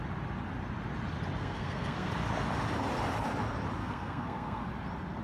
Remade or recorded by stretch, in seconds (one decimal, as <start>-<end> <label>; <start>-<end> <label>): 0.0-1.4 recorded; 1.4-2.1 remade; 2.1-3.8 recorded; 3.8-4.7 remade; 4.7-5.2 recorded